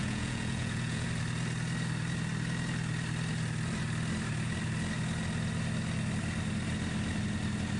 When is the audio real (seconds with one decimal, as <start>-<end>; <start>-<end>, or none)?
1.1-7.8